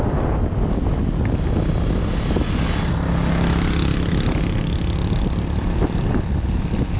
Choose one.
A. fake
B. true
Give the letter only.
B